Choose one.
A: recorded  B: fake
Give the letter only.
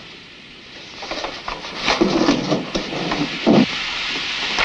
A